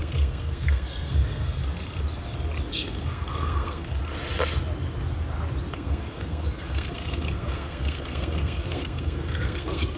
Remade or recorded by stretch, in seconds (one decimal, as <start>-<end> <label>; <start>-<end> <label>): 0.0-1.6 remade; 1.6-2.7 recorded; 2.7-4.0 remade; 4.0-5.7 recorded; 5.7-10.0 remade